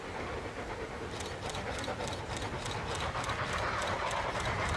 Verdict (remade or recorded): recorded